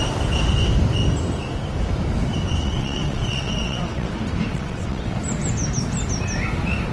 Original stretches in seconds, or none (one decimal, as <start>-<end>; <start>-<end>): 0.0-2.6; 4.1-4.5; 5.2-6.9